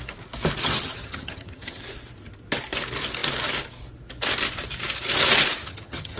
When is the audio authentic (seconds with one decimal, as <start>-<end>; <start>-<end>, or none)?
0.0-0.6; 1.8-5.6